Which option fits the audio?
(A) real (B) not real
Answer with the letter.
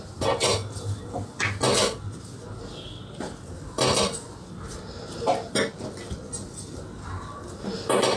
A